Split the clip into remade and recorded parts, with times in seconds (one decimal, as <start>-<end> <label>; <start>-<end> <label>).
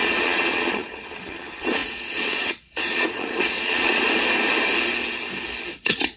0.0-4.0 remade; 4.0-5.7 recorded; 5.7-6.2 remade